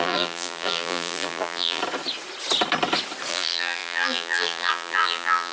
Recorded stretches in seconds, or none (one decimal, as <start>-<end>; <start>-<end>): 1.8-3.3